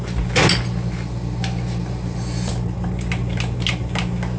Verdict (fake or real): real